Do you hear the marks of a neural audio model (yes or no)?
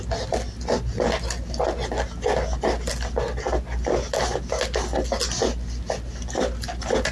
no